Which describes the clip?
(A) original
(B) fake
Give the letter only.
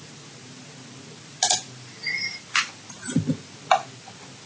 A